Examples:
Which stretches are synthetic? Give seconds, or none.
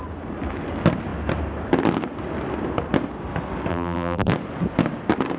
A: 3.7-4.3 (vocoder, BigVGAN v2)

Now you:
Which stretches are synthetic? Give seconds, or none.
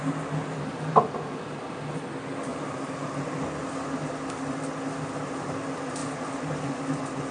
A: 0.0-1.8 (vocoder, BigVGAN v2); 2.5-3.6; 6.0-6.7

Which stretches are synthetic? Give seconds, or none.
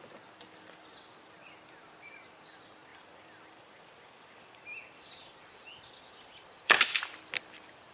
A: 2.9-7.2 (vocoder, BigVGAN v2)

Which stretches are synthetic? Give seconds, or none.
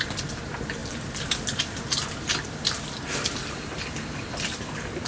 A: 0.8-2.5 (vocoder, BigVGAN v2)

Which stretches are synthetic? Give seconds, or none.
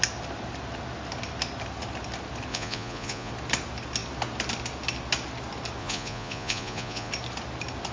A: 2.5-3.3 (vocoder, Vocos); 5.8-7.1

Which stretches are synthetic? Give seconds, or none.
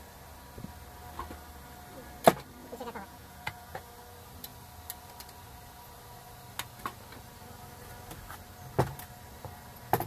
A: 2.6-3.9 (vocoder, Vocos)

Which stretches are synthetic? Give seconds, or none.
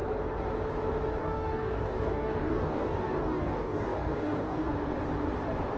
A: 1.2-4.7 (codec, DAC)